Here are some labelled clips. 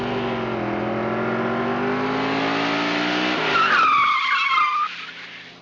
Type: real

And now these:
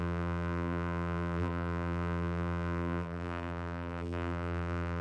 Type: fake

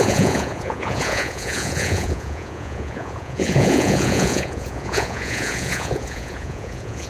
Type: fake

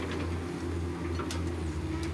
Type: real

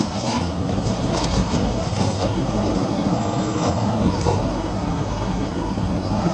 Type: fake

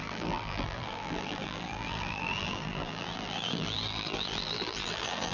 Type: fake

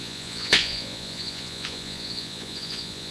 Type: fake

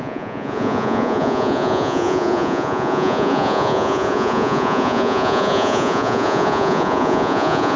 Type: fake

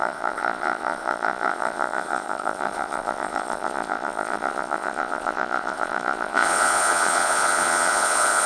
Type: fake